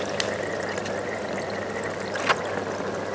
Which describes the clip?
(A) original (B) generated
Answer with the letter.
A